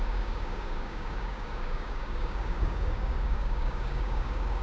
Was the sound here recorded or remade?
remade